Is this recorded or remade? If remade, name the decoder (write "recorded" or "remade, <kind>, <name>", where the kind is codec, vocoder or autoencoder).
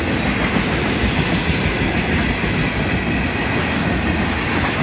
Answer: recorded